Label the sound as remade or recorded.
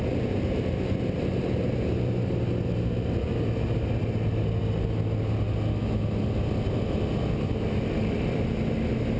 recorded